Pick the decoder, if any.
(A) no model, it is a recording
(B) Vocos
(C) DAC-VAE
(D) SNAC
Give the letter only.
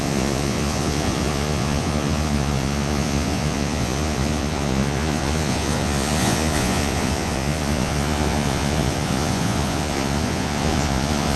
B